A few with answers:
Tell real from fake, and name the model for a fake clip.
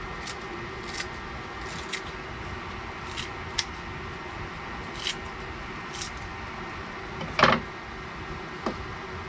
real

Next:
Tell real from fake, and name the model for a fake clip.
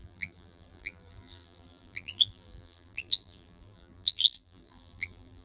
fake, vocoder, BigVGAN v2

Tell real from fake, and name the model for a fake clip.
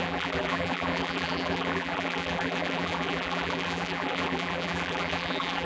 fake, vocoder, BigVGAN v2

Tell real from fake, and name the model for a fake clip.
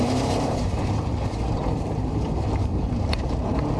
fake, vocoder, BigVGAN v2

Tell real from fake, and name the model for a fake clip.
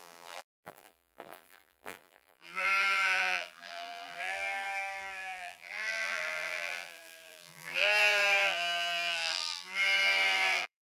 fake, vocoder, BigVGAN v2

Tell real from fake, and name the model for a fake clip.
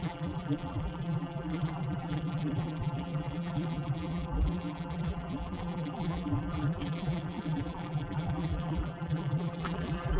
fake, vocoder, BigVGAN v2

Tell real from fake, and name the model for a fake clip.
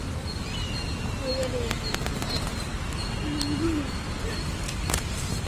real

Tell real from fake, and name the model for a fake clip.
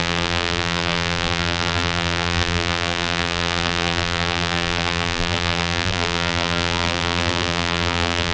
fake, vocoder, BigVGAN v2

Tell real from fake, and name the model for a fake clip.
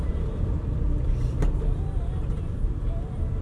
fake, vocoder, BigVGAN v2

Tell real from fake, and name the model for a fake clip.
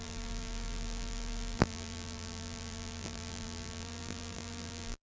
fake, vocoder, BigVGAN v2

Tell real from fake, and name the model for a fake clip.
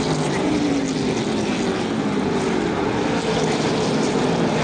real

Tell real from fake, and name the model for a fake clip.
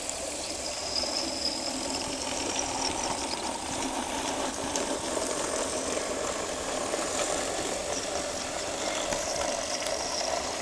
fake, vocoder, BigVGAN v2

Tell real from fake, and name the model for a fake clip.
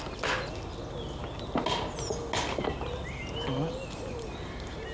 real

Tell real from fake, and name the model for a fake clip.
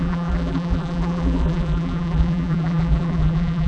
fake, vocoder, BigVGAN v2